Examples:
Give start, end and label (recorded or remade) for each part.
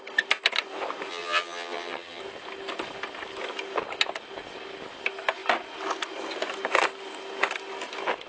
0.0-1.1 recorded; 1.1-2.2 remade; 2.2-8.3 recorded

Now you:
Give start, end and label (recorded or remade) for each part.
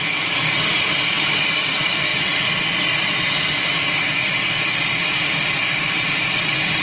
0.0-2.1 remade; 2.1-6.2 recorded; 6.2-6.8 remade